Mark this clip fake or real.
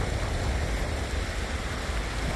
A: real